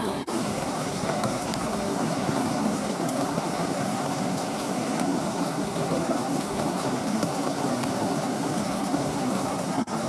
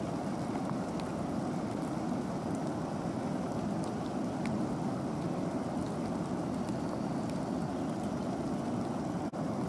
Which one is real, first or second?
second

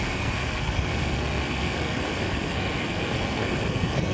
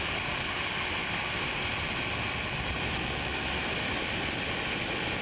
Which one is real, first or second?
second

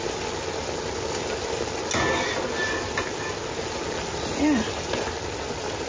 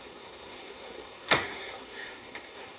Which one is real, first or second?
first